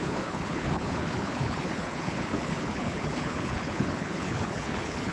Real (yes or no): no